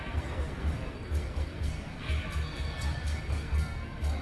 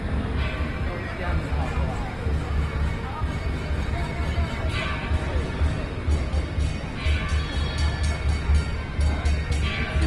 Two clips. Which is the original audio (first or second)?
second